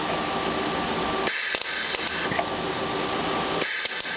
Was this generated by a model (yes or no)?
no